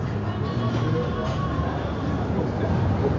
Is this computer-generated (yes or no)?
no